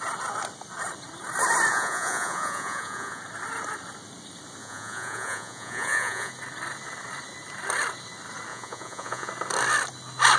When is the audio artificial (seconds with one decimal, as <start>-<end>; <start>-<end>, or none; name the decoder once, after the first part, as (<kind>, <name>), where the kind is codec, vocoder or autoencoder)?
1.7-3.2 (vocoder, Vocos); 4.6-6.3; 8.5-9.3